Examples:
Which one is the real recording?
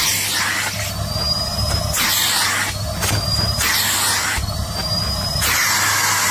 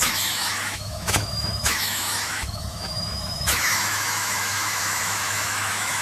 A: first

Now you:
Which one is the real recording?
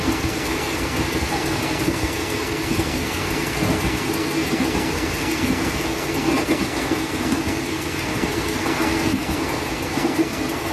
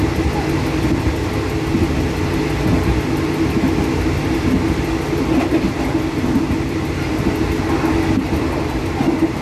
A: second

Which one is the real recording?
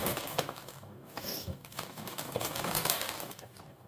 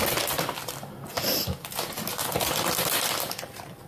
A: second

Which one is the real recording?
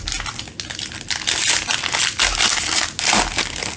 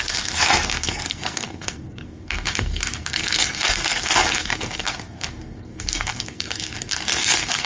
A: first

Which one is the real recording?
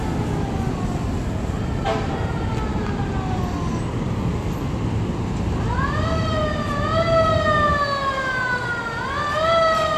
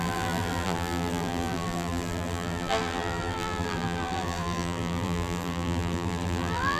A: first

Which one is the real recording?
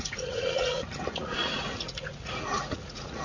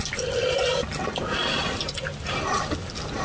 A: second